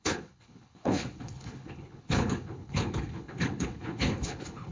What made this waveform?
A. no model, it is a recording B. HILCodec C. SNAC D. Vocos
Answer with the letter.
B